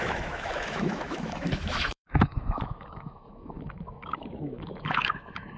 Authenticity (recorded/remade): remade